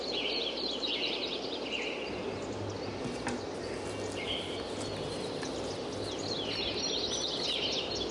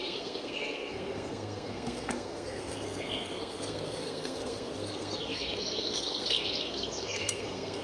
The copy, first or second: second